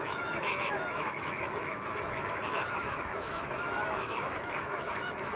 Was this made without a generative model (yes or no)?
no